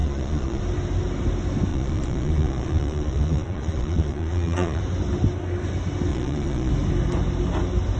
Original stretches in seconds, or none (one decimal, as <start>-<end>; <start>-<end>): 0.6-1.7; 4.8-6.1; 6.7-8.0